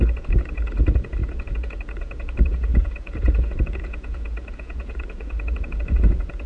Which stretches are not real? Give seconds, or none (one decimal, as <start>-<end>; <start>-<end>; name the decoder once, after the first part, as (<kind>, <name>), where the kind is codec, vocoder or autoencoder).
0.0-6.5 (vocoder, Vocos)